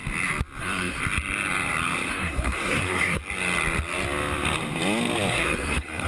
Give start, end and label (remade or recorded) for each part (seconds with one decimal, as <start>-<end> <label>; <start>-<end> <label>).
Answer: 0.0-0.6 recorded; 0.6-1.0 remade; 1.0-2.1 recorded; 2.1-3.2 remade; 3.2-5.3 recorded; 5.3-6.1 remade